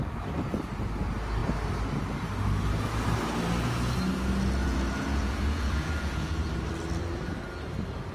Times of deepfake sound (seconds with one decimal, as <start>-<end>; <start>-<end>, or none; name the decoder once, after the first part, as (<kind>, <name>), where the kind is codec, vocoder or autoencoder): 4.6-6.3 (vocoder, Vocos)